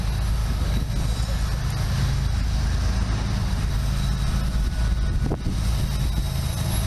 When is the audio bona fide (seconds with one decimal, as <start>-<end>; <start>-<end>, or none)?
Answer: 0.0-0.4; 0.9-6.9